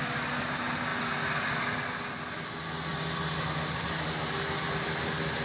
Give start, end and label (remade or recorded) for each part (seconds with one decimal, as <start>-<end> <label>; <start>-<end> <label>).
0.0-5.4 recorded